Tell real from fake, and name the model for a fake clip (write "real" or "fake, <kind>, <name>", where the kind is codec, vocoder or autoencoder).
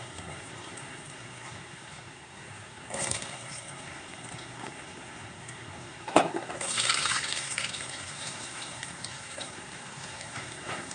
fake, codec, SNAC